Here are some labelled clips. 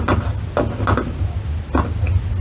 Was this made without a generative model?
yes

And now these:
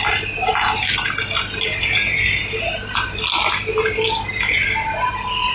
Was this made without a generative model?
yes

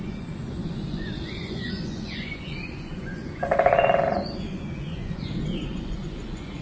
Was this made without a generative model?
no